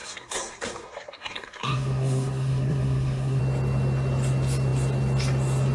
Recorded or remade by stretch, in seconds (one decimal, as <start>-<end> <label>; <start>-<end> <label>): 0.0-3.4 remade; 3.4-5.7 recorded